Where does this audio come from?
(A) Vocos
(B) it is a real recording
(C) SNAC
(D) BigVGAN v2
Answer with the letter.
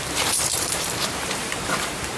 D